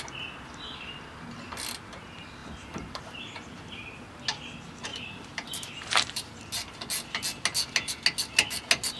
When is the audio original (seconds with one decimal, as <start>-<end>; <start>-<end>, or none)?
0.0-2.4; 3.2-4.9; 6.4-9.0